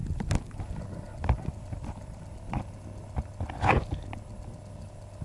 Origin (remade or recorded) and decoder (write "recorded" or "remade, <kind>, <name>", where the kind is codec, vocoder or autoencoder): recorded